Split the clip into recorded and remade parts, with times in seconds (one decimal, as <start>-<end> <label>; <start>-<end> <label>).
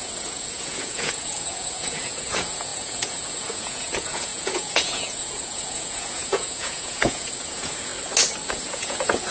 0.0-7.9 remade; 7.9-8.5 recorded; 8.5-9.3 remade